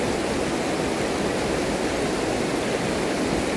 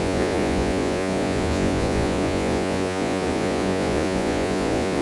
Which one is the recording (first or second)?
first